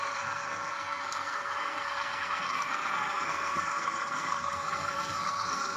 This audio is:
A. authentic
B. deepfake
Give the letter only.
B